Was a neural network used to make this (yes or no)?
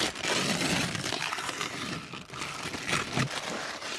no